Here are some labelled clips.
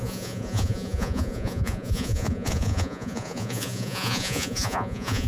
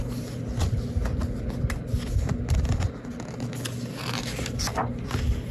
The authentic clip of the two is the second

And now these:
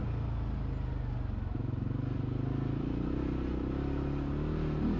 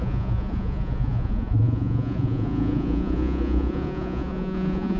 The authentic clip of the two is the first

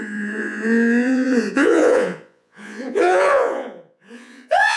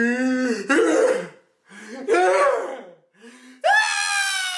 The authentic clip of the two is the second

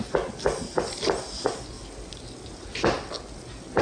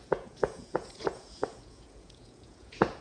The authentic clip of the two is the first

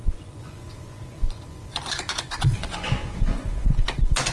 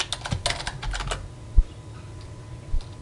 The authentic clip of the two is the second